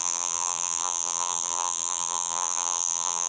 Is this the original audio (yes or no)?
no